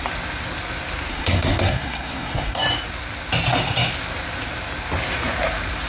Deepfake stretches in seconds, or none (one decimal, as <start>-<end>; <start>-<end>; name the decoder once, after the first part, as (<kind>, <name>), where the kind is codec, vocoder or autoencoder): 1.1-2.6 (codec, SNAC)